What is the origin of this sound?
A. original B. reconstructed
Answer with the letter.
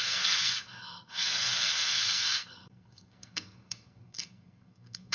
B